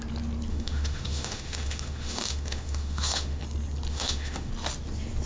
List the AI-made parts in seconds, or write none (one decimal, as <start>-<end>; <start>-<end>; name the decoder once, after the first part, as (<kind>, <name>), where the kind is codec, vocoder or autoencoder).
0.5-3.4 (autoencoder, DAC-VAE); 3.9-4.5